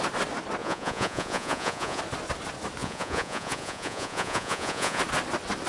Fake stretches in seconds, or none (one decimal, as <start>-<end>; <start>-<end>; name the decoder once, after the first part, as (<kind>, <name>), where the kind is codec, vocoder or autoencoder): 0.6-2.0 (vocoder, Vocos); 2.8-5.0